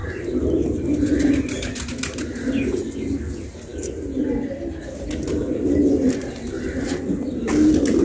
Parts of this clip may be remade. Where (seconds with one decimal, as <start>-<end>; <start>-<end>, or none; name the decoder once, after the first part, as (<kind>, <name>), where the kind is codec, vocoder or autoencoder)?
none